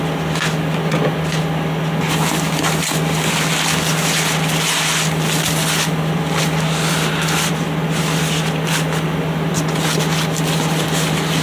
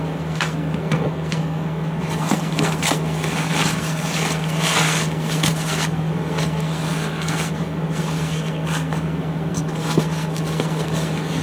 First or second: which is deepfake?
second